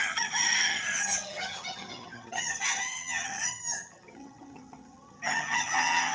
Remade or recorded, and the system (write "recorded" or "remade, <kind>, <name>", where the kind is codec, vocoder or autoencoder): remade, vocoder, HiFi-GAN